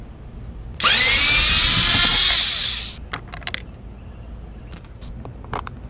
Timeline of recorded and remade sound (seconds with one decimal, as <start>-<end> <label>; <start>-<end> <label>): 0.0-5.9 recorded